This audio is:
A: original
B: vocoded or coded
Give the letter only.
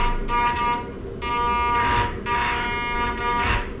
A